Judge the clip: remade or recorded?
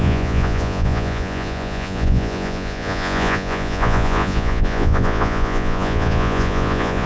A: remade